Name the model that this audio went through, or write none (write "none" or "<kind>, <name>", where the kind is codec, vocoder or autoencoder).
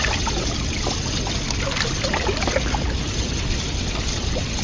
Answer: none